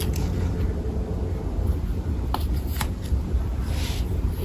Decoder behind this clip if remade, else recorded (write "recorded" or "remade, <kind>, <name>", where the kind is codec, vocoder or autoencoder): recorded